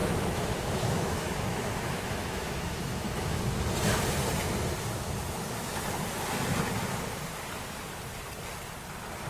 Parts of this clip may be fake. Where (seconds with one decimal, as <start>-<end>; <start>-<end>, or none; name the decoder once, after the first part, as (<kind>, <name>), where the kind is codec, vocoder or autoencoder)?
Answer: 0.0-3.6 (autoencoder, DAC-VAE)

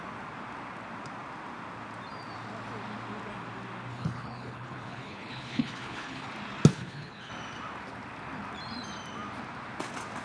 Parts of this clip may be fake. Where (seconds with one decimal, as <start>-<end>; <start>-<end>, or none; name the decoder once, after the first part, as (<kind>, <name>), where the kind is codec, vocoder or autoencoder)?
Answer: 3.9-6.3 (codec, HILCodec); 6.7-7.3

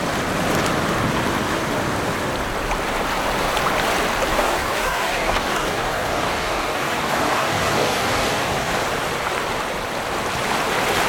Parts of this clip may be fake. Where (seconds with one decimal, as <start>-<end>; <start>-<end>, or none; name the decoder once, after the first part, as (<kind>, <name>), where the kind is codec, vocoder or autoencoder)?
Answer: 4.3-8.7 (codec, DAC)

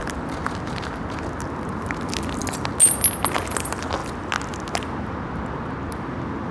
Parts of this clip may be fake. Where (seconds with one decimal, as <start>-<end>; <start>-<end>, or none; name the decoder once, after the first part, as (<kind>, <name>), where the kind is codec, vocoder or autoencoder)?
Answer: none

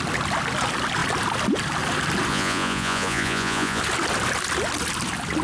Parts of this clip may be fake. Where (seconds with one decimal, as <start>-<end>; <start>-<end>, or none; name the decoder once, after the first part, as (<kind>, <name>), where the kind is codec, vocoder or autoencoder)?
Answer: 2.3-3.8 (vocoder, Vocos)

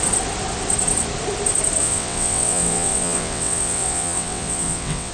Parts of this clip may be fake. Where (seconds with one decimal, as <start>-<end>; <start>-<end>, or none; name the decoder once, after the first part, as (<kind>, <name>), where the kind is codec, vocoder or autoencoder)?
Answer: 1.8-5.1 (vocoder, WaveNeXt)

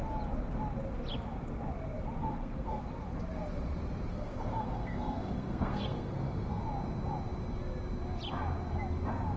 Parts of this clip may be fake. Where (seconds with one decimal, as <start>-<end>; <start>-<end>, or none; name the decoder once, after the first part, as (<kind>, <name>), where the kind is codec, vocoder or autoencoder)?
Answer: 2.2-2.8 (codec, SNAC); 4.1-6.6